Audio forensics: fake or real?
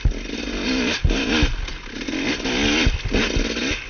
real